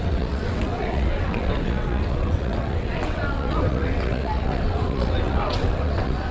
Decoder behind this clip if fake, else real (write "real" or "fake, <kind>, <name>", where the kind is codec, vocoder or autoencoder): fake, vocoder, WaveNeXt